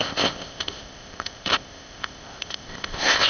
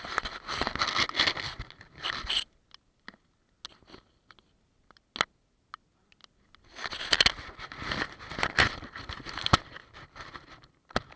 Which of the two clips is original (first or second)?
second